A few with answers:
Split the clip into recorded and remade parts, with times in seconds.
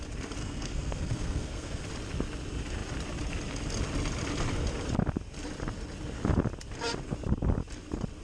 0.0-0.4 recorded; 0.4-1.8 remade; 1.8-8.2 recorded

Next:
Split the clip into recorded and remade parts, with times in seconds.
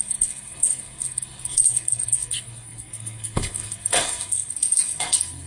0.0-5.5 remade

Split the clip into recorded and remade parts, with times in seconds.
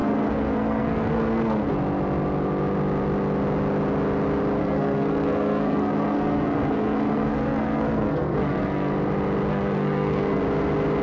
0.0-1.7 remade; 1.7-4.6 recorded; 4.6-8.9 remade; 8.9-9.5 recorded; 9.5-10.4 remade; 10.4-11.0 recorded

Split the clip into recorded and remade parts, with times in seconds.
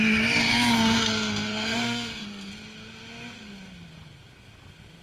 0.0-0.5 recorded; 0.5-2.5 remade; 2.5-5.0 recorded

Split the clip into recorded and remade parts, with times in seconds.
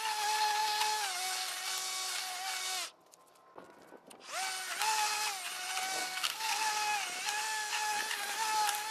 0.0-6.0 recorded; 6.0-6.7 remade; 6.7-8.9 recorded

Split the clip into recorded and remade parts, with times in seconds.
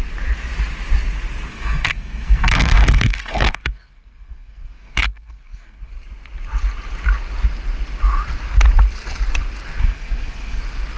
0.0-1.5 recorded; 1.5-5.9 remade; 5.9-9.8 recorded; 9.8-10.6 remade; 10.6-11.0 recorded